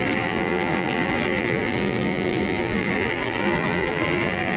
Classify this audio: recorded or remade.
remade